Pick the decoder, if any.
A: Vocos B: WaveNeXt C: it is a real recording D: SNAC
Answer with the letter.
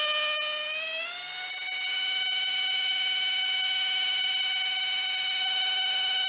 C